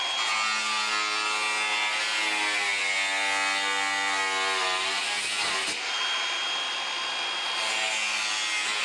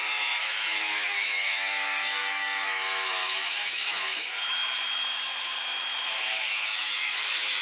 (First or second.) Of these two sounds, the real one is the first